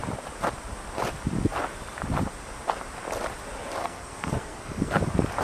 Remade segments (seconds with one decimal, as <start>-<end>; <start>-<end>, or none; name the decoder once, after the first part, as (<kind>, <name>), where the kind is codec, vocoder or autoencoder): 3.8-5.0 (codec, SNAC)